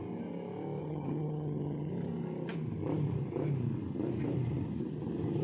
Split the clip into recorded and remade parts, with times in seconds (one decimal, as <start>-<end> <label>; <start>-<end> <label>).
0.0-0.8 recorded; 0.8-1.9 remade; 1.9-5.4 recorded